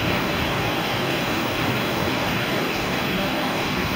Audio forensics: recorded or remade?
remade